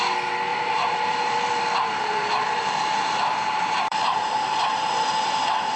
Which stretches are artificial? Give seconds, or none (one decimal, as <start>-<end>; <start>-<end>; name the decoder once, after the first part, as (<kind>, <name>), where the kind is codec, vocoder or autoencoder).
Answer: 0.5-1.5 (vocoder, BigVGAN v2); 1.9-4.6